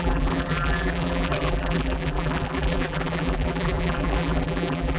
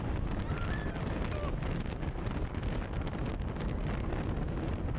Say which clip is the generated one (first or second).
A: first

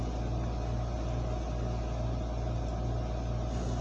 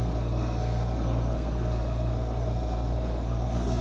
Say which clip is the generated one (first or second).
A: second